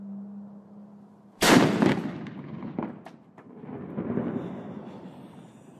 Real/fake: real